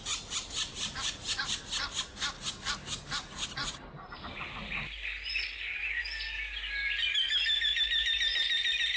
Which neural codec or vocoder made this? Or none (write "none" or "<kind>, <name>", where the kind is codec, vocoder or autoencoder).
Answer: none